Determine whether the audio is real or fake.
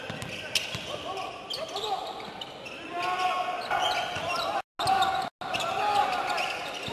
real